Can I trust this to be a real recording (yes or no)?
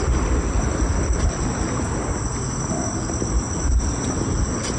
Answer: yes